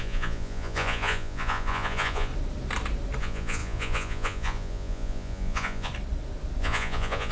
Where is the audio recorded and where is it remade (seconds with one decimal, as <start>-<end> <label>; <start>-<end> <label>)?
0.0-2.3 remade; 2.3-3.2 recorded; 3.2-5.9 remade; 5.9-6.6 recorded; 6.6-7.3 remade